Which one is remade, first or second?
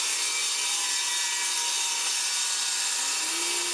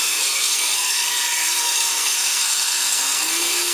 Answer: second